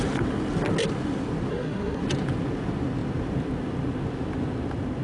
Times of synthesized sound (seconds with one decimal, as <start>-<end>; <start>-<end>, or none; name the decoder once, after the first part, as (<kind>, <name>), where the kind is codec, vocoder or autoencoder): 1.5-2.0 (codec, SNAC)